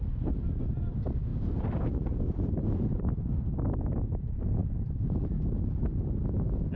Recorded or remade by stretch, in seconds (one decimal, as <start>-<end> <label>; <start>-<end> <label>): 0.0-6.8 recorded